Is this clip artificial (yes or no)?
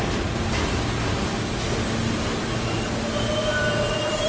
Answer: no